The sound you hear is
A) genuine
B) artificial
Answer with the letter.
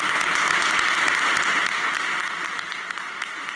A